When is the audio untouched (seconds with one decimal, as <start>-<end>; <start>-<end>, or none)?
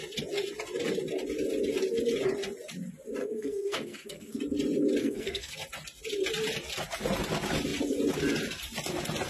0.0-3.2; 4.4-5.0; 5.5-9.3